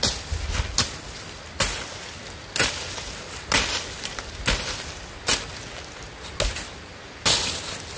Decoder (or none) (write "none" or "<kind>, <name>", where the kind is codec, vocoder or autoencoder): none